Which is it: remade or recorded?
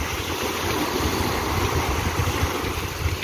recorded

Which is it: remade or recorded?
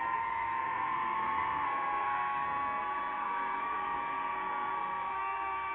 remade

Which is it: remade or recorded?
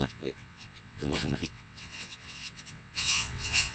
remade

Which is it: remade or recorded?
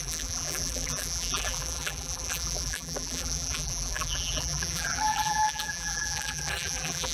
remade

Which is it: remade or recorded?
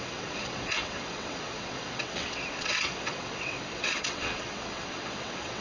remade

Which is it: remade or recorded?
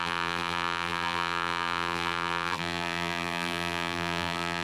remade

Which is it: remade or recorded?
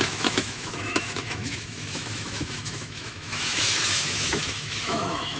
remade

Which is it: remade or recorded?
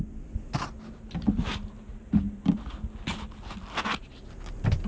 recorded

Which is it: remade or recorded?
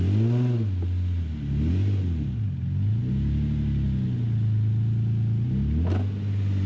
recorded